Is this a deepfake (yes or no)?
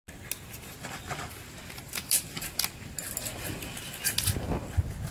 no